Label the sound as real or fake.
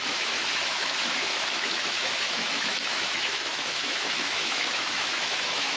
fake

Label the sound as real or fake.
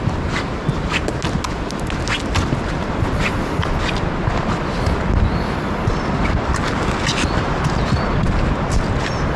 real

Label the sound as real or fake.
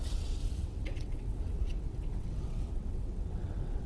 fake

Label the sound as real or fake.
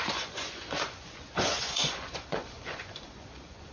fake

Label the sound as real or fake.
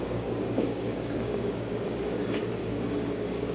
fake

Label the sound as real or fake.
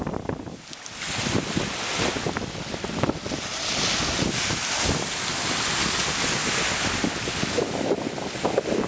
real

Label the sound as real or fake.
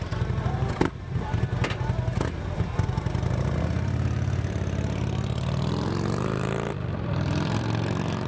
fake